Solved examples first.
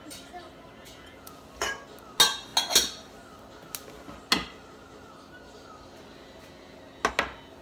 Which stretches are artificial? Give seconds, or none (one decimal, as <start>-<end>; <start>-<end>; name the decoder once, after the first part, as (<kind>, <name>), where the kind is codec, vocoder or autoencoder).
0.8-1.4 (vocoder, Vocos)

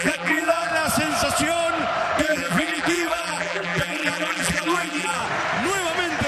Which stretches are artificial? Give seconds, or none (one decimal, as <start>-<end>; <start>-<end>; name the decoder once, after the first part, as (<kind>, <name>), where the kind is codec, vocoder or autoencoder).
0.0-0.7 (vocoder, BigVGAN v2); 2.2-5.2

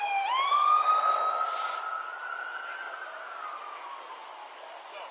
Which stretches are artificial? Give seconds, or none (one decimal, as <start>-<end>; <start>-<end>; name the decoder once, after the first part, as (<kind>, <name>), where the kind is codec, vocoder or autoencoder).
none

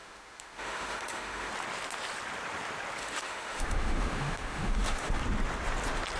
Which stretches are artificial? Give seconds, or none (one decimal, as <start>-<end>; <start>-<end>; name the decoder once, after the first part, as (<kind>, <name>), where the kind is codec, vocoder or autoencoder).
0.0-1.5 (autoencoder, DAC-VAE); 3.0-5.2

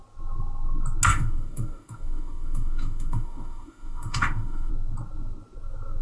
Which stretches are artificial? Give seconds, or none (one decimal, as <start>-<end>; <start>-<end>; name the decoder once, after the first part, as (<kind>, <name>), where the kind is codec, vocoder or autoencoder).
1.1-4.7 (autoencoder, DAC-VAE)